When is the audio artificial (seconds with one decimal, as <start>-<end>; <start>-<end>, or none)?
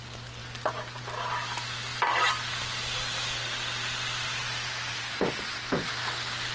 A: none